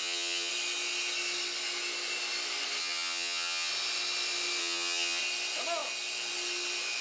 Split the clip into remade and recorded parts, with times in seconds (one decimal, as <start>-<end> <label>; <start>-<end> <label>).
0.0-0.5 remade; 0.5-2.8 recorded; 2.8-3.7 remade; 3.7-4.6 recorded; 4.6-5.2 remade; 5.2-7.0 recorded